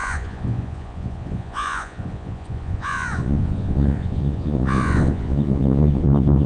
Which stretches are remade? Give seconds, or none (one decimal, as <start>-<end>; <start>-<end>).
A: 0.0-6.5